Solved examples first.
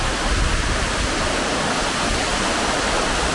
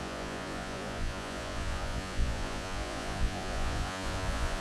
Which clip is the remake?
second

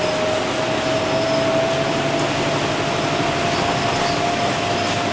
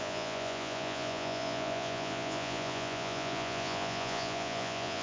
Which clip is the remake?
second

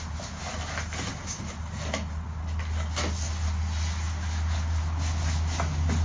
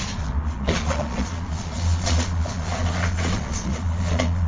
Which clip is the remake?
second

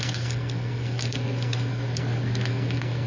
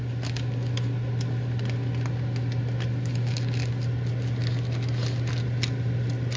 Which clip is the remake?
first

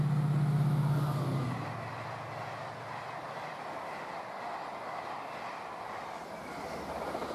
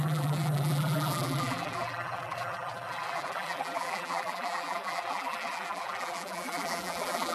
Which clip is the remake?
second